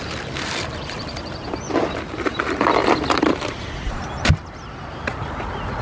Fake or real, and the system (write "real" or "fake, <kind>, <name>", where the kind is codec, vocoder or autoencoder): real